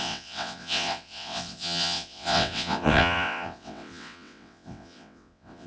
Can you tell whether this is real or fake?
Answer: fake